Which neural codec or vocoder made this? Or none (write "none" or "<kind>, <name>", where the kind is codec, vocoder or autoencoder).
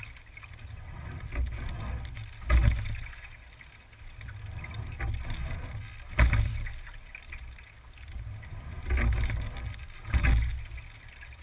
none